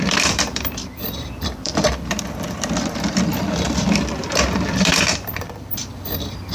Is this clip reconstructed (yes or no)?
yes